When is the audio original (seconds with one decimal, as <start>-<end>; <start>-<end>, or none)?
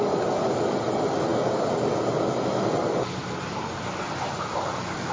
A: 0.0-5.1